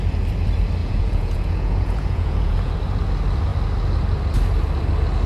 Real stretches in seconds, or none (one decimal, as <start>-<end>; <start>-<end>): 0.0-0.8; 2.7-5.3